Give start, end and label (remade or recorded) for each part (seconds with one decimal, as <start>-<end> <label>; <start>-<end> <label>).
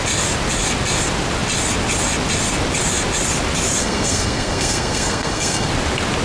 0.0-3.8 recorded; 3.8-5.7 remade; 5.7-6.2 recorded